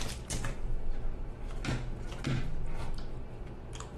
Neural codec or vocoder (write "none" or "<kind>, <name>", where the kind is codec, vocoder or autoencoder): none